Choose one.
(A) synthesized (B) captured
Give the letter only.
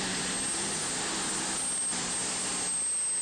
B